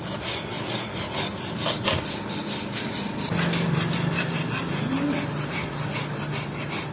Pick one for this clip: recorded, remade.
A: recorded